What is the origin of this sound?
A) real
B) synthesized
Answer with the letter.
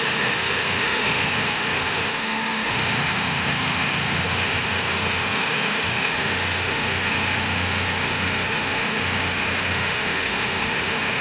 B